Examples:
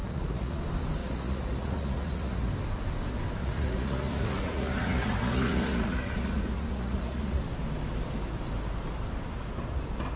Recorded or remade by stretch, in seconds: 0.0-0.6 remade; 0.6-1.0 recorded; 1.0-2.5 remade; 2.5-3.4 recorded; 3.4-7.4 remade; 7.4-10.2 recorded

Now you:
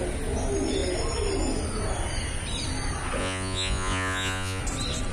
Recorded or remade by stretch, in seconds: 0.0-3.2 recorded; 3.2-4.6 remade; 4.6-5.1 recorded

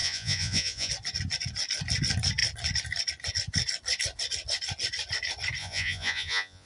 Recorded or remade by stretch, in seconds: 0.0-0.9 remade; 0.9-5.6 recorded; 5.6-6.7 remade

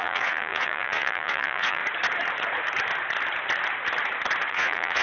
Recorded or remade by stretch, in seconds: 0.0-1.8 remade; 1.8-4.5 recorded; 4.5-5.0 remade